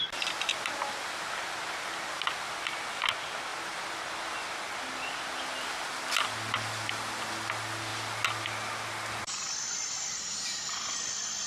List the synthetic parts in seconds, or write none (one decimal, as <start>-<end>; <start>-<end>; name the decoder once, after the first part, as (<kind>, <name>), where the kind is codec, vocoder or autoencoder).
3.5-5.9 (vocoder, BigVGAN v2)